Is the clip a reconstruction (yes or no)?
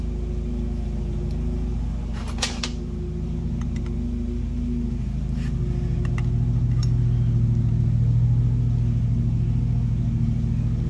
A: no